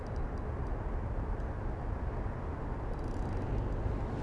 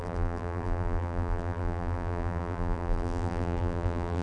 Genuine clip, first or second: first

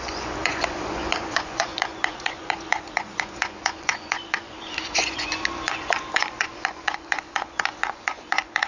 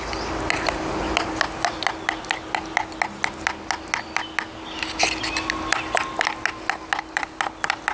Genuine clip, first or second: second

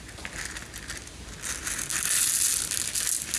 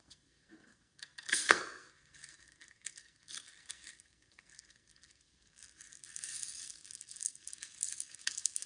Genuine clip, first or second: first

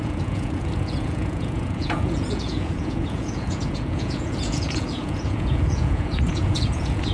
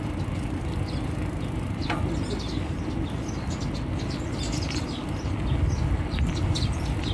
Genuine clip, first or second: second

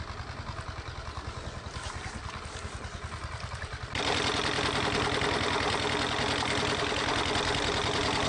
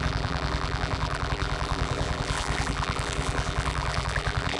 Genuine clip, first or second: first